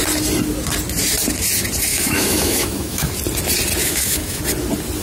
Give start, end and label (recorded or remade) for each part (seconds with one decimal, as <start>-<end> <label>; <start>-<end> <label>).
0.0-1.9 recorded; 1.9-3.1 remade; 3.1-3.8 recorded; 3.8-4.4 remade; 4.4-5.0 recorded

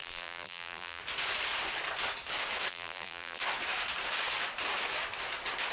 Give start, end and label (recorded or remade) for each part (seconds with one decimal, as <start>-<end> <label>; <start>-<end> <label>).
0.0-1.0 remade; 1.0-2.7 recorded; 2.7-3.4 remade; 3.4-5.7 recorded